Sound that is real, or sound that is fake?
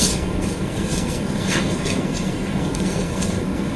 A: fake